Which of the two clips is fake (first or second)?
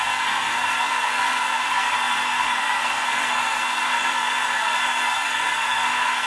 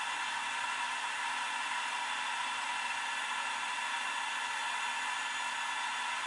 first